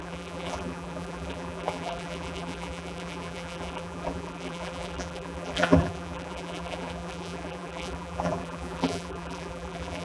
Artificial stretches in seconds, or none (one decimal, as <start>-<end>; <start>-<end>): 0.0-10.0